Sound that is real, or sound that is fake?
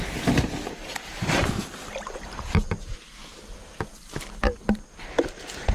real